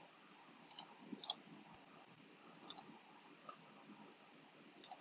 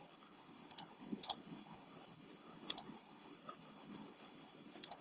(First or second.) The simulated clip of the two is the second